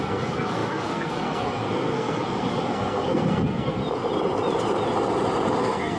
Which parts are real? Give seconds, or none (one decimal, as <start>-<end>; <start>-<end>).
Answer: 3.8-5.6